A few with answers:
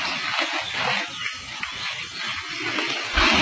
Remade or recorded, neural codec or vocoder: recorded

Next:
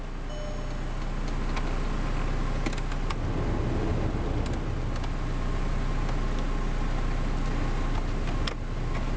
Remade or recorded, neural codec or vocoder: recorded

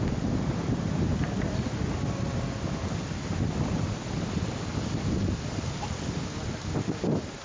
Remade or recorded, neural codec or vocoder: recorded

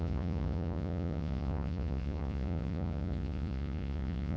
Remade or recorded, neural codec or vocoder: remade, vocoder, Vocos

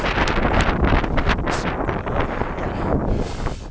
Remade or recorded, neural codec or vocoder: recorded